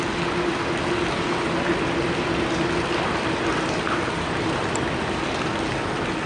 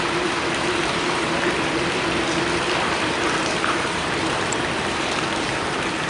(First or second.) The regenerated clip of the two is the second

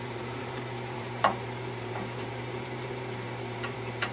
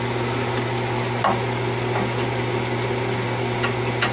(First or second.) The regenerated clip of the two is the first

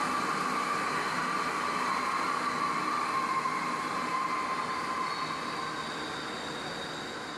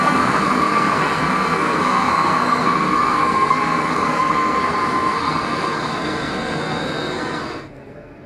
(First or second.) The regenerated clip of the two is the second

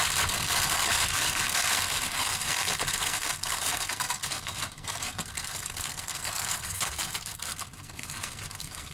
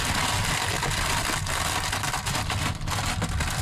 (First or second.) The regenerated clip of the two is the first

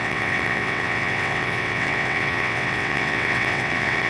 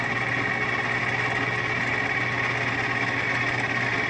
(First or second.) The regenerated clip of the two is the first